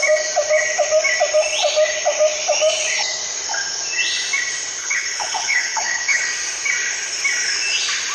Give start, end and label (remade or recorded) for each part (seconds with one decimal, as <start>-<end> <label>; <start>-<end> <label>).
0.0-4.8 recorded; 4.8-6.2 remade; 6.2-8.1 recorded